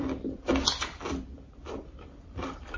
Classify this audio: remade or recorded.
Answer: remade